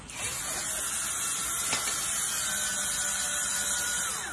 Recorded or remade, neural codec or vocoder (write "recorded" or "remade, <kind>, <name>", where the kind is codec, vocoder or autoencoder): recorded